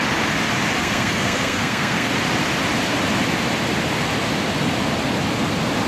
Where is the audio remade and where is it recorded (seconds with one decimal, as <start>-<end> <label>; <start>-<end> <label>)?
0.0-0.8 recorded; 0.8-2.1 remade; 2.1-5.9 recorded